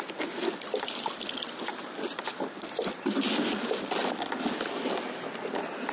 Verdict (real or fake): real